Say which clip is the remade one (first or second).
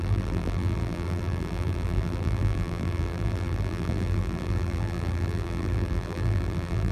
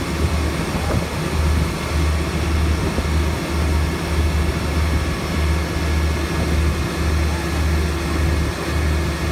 first